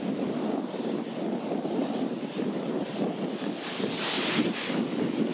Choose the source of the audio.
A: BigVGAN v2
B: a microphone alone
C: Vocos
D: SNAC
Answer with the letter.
B